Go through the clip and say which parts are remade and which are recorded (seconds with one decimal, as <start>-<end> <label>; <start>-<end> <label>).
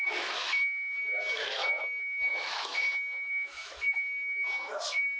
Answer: 0.0-5.2 remade